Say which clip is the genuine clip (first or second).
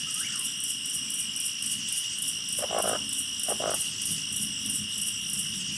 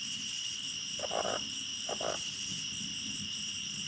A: first